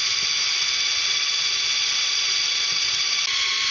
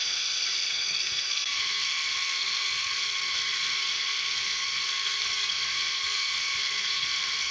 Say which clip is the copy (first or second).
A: second